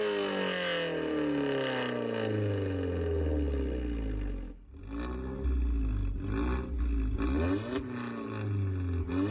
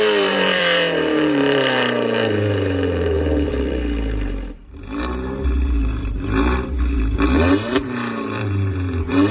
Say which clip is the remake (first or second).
second